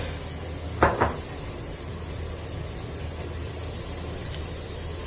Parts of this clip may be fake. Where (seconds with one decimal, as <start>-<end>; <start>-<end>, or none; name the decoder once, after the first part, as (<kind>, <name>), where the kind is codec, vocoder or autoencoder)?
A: none